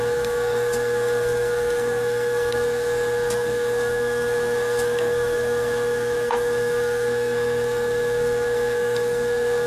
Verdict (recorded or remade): remade